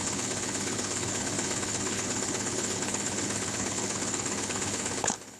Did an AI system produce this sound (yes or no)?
yes